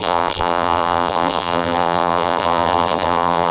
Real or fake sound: fake